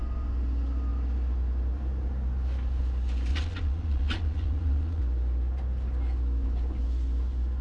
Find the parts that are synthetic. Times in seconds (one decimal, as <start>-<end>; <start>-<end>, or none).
3.3-5.0